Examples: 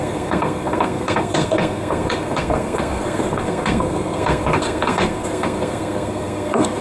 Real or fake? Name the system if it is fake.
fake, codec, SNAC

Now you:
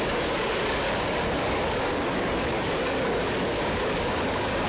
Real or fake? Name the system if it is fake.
fake, codec, DAC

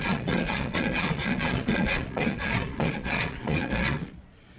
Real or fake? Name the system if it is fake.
fake, vocoder, Vocos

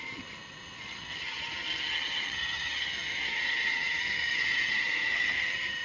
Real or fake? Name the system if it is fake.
fake, vocoder, HiFi-GAN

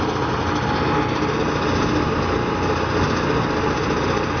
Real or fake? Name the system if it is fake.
real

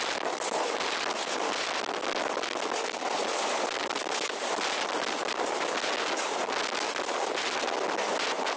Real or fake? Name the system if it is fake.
real